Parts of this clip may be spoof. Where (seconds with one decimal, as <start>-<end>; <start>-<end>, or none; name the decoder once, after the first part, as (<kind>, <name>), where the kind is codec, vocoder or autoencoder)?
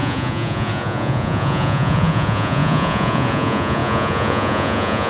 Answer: 0.0-5.1 (vocoder, Vocos)